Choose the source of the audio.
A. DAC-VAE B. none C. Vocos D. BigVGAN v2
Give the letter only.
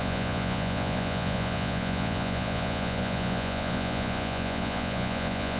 C